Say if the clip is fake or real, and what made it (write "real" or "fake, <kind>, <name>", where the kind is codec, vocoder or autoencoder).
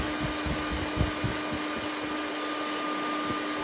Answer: real